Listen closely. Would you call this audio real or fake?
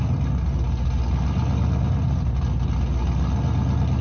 real